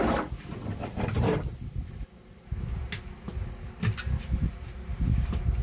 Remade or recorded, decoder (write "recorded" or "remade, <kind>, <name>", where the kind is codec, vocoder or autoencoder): recorded